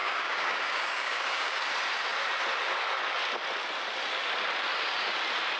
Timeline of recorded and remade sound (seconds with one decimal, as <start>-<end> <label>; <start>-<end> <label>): 0.0-1.6 remade; 1.6-5.6 recorded

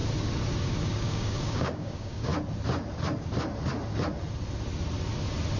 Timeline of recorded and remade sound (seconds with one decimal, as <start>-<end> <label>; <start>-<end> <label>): 0.0-0.6 recorded; 0.6-2.3 remade; 2.3-5.6 recorded

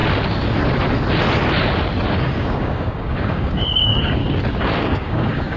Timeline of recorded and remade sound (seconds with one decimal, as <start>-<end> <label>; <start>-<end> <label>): 0.0-2.2 recorded; 2.2-4.2 remade; 4.2-4.8 recorded; 4.8-5.6 remade

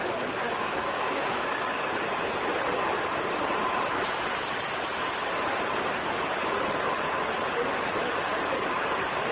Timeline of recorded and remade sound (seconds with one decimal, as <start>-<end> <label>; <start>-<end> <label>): 0.0-1.9 remade; 1.9-9.3 recorded